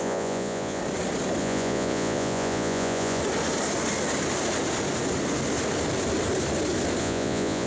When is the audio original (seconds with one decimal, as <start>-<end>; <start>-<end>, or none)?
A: 0.8-1.4; 3.2-7.0